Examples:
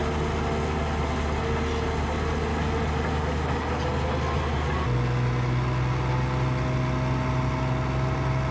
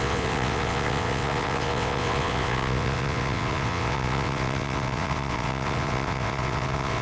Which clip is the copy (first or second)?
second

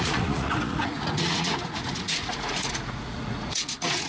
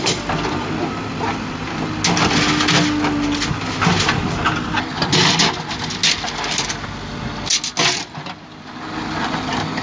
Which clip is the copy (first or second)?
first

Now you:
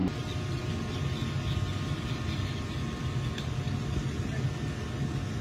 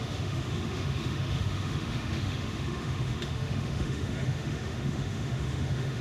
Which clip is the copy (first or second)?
second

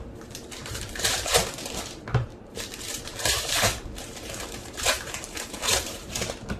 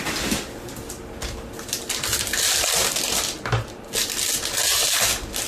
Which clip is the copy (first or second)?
first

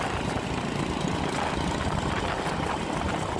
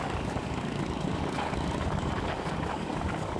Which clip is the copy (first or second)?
second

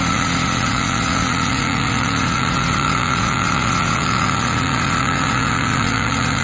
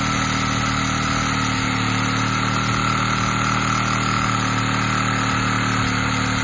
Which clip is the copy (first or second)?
first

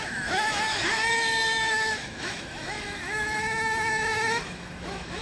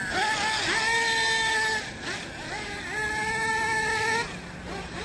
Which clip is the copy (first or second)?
first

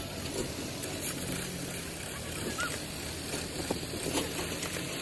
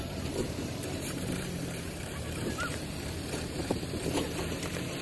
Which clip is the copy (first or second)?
second